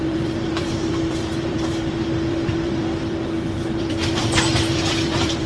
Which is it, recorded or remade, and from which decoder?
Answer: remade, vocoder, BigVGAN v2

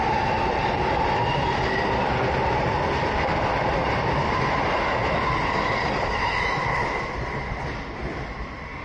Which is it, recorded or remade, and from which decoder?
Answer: recorded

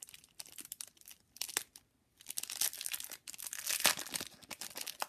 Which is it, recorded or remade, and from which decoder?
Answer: recorded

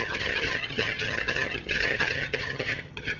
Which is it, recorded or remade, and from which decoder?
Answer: remade, vocoder, HiFi-GAN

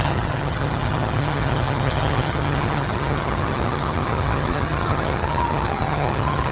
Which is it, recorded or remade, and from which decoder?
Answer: remade, vocoder, HiFi-GAN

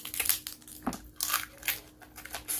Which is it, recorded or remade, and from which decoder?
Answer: recorded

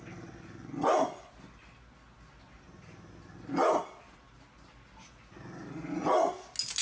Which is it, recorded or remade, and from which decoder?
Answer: recorded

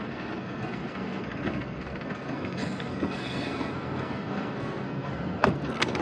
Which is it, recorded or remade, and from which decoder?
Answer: remade, codec, SNAC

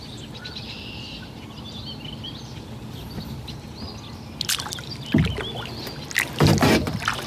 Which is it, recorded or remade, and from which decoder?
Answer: recorded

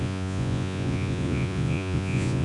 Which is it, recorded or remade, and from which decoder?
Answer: remade, vocoder, Vocos